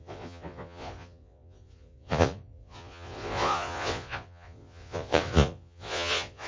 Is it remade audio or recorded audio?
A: remade